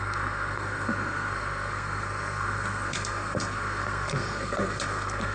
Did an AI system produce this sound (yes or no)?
yes